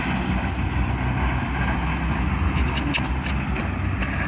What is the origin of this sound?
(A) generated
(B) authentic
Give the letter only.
B